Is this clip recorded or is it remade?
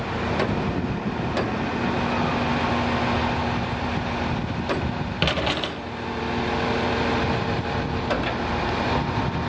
recorded